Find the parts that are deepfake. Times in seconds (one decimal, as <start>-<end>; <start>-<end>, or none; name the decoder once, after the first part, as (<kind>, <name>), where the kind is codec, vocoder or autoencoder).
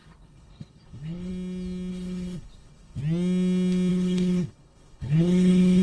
0.0-1.3 (codec, HILCodec); 1.9-3.0; 3.9-5.8